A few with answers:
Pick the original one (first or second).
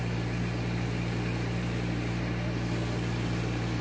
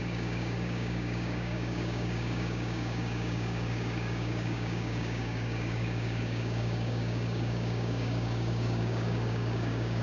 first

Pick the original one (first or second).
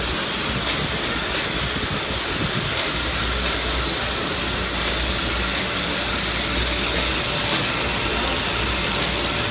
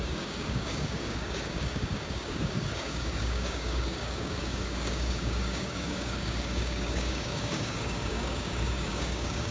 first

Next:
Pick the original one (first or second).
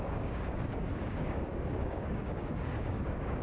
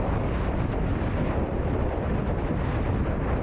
second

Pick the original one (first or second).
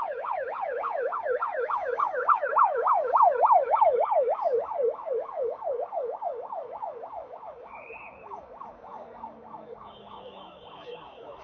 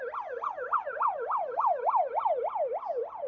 second